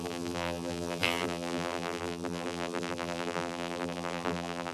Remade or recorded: remade